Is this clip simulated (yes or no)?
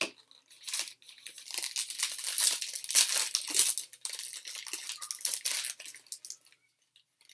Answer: no